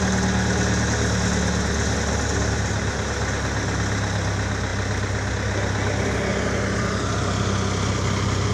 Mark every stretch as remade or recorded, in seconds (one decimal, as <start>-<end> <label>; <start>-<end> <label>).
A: 0.0-8.5 recorded